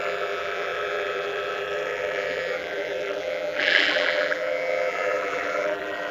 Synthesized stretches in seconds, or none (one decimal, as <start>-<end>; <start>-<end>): 0.0-6.1